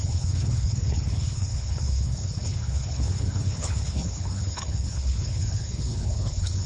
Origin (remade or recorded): remade